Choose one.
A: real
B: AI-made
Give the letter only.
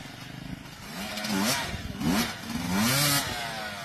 A